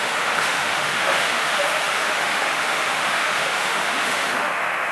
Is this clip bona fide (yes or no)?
no